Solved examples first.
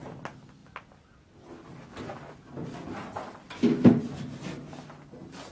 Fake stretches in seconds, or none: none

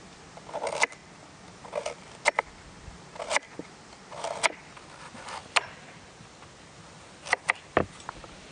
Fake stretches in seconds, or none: none

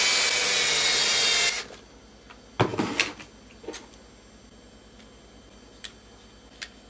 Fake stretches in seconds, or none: none

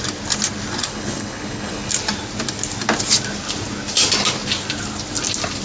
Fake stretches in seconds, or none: 0.9-1.9 (codec, HILCodec)